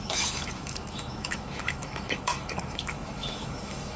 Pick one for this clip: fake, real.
fake